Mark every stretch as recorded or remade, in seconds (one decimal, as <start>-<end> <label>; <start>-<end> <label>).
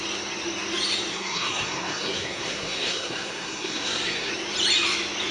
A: 0.0-1.1 recorded; 1.1-4.3 remade; 4.3-5.3 recorded